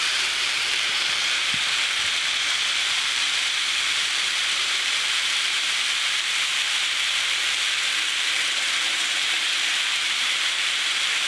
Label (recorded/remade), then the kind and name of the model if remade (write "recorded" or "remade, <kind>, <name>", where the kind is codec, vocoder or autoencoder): remade, vocoder, BigVGAN v2